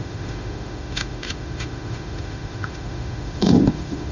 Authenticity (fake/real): fake